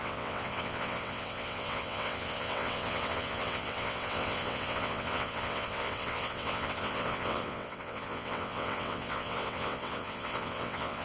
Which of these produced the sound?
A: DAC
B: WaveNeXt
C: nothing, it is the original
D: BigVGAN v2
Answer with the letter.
B